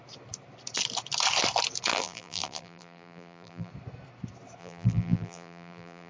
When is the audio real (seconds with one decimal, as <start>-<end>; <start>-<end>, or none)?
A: 0.0-1.9; 3.7-4.6